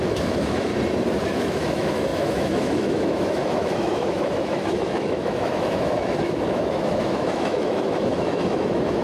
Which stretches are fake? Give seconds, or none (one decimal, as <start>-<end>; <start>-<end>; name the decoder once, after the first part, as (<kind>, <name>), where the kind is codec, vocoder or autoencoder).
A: 0.0-0.7 (autoencoder, DAC-VAE); 1.2-9.0